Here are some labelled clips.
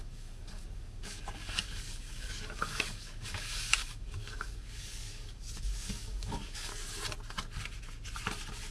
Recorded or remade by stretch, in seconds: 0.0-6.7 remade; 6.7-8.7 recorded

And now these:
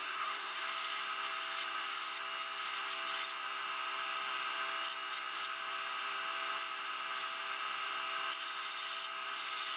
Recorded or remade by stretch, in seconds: 0.0-0.6 remade; 0.6-9.8 recorded